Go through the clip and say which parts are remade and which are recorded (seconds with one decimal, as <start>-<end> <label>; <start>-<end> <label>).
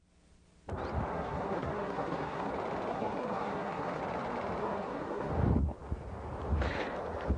0.0-1.1 recorded; 1.1-2.5 remade; 2.5-2.9 recorded; 2.9-4.0 remade; 4.0-4.6 recorded; 4.6-5.3 remade; 5.3-7.4 recorded